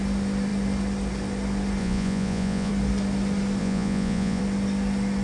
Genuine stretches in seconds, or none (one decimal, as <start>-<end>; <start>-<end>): 0.0-1.8; 2.7-3.6; 4.4-5.2